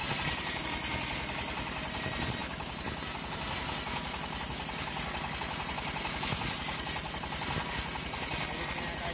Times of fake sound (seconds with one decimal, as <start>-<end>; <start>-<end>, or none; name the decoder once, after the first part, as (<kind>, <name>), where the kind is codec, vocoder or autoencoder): 0.0-0.6 (vocoder, BigVGAN v2)